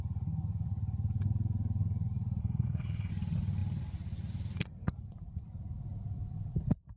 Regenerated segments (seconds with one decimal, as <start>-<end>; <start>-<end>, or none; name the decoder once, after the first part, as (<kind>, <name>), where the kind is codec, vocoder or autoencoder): 2.4-3.1 (codec, HILCodec)